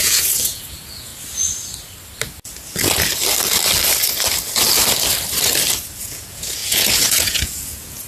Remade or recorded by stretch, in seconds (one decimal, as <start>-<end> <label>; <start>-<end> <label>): 0.0-1.1 remade; 1.1-6.0 recorded; 6.0-8.1 remade